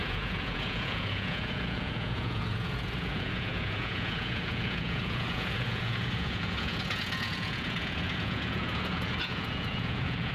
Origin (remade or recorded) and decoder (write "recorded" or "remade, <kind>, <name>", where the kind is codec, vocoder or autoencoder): remade, vocoder, Vocos